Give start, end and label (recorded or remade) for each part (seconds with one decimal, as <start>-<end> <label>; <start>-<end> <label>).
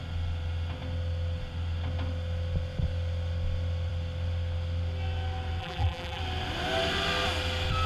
0.0-5.6 recorded; 5.6-6.2 remade; 6.2-7.9 recorded